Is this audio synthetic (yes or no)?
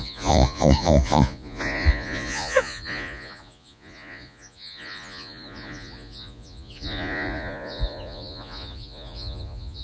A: yes